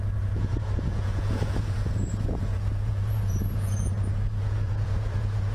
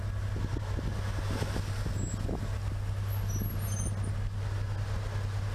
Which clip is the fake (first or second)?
first